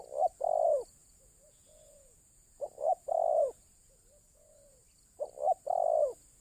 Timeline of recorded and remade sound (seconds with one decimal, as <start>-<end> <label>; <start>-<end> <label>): 0.0-1.0 recorded; 1.0-4.8 remade; 4.8-6.4 recorded